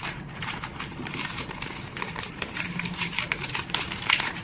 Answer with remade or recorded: remade